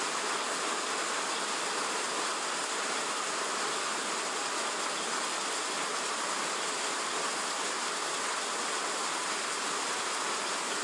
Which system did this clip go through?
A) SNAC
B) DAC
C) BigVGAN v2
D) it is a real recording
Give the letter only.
D